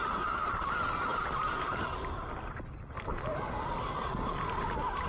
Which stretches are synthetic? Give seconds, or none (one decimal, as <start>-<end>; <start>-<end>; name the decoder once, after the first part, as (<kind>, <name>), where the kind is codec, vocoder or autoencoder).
none